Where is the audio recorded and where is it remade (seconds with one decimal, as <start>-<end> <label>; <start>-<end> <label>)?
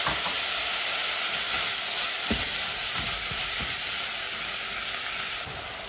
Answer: 0.0-2.8 recorded; 2.8-3.4 remade; 3.4-5.9 recorded